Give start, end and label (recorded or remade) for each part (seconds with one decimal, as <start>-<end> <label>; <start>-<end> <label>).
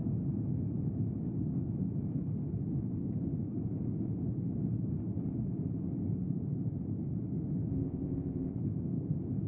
0.0-7.7 recorded; 7.7-8.5 remade; 8.5-9.5 recorded